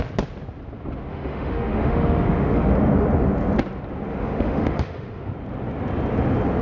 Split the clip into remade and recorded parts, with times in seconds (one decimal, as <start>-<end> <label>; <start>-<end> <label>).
0.0-1.1 recorded; 1.1-2.7 remade; 2.7-4.1 recorded; 4.1-5.3 remade; 5.3-6.6 recorded